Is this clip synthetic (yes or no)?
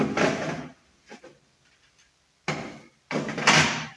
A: no